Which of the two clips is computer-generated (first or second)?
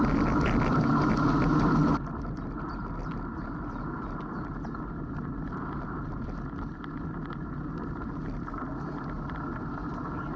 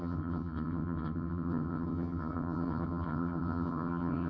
second